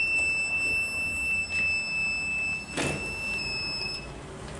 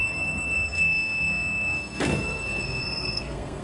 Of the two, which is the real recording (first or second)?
first